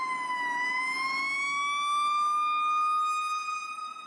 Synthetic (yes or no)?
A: no